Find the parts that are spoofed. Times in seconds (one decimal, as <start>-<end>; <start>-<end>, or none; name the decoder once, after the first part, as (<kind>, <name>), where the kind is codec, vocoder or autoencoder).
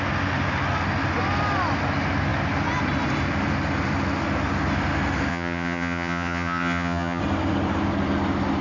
5.3-7.2 (vocoder, HiFi-GAN)